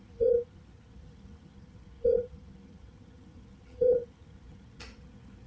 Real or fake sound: fake